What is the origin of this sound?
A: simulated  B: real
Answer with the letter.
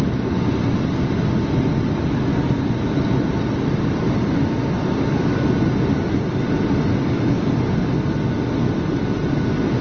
B